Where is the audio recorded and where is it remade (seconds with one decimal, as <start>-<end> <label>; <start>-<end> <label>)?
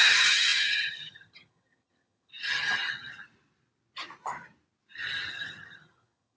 0.0-2.3 remade; 2.3-5.3 recorded; 5.3-6.4 remade